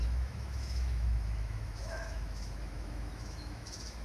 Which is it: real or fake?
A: fake